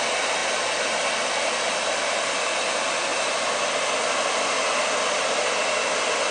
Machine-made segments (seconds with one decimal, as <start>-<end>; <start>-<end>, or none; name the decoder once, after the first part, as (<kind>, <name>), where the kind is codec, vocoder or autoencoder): none